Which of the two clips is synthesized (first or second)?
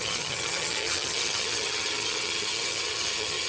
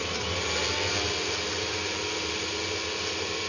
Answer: first